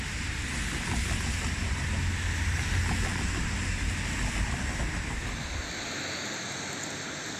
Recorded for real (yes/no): yes